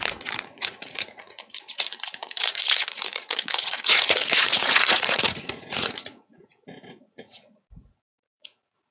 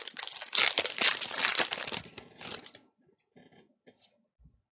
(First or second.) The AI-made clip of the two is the first